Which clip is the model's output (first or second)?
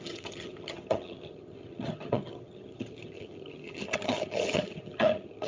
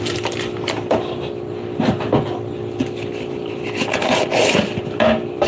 first